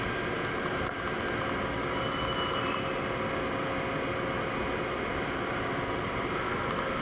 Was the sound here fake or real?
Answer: real